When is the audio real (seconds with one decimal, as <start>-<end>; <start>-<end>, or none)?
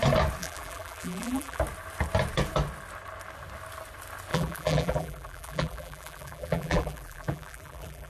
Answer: 0.0-0.4; 1.6-4.3